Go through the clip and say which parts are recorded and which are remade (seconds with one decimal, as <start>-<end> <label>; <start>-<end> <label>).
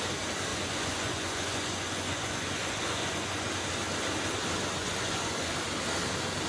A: 0.0-0.5 recorded; 0.5-3.5 remade; 3.5-4.8 recorded; 4.8-5.5 remade; 5.5-6.5 recorded